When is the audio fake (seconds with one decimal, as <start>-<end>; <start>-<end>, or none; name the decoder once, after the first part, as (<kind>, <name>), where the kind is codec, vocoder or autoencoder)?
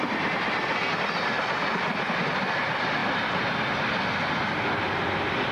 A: none